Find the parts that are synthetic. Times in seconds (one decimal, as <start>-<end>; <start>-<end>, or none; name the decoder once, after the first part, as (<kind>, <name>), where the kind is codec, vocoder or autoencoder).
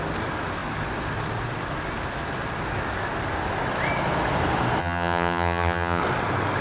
4.8-6.0 (vocoder, HiFi-GAN)